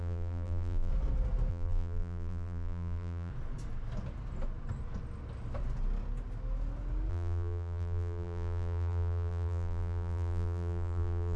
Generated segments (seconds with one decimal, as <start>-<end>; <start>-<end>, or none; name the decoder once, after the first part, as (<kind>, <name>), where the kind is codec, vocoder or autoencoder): 0.0-0.9 (vocoder, BigVGAN v2); 1.5-3.3; 7.1-11.4